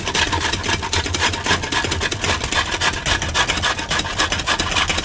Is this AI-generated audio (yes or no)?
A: no